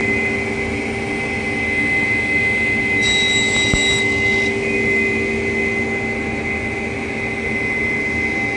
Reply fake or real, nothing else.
real